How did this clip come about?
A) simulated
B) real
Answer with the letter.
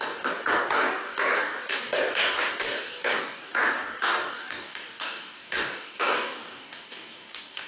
A